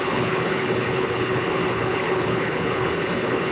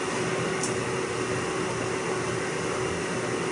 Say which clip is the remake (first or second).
first